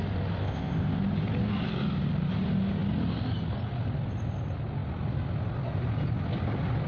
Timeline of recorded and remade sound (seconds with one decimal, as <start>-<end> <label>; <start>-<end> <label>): 0.0-0.4 recorded; 0.4-1.0 remade; 1.0-6.9 recorded